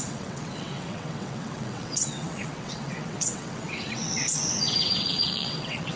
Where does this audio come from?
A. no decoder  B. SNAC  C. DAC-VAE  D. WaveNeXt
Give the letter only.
D